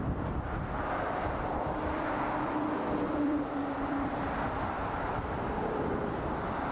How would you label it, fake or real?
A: fake